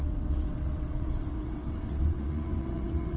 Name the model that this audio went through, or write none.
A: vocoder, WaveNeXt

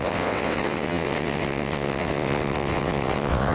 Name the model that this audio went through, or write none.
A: vocoder, WaveNeXt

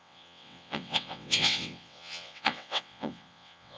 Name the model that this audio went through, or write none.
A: vocoder, WaveNeXt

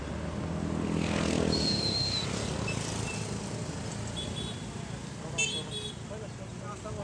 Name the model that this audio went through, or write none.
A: none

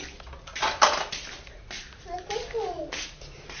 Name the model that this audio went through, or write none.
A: none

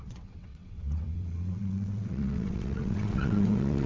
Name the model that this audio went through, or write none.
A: vocoder, WaveNeXt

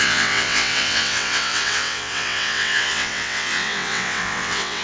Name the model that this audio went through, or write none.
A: vocoder, WaveNeXt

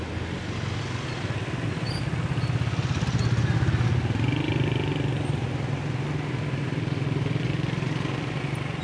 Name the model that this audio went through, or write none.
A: none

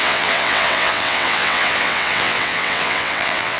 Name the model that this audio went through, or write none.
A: vocoder, WaveNeXt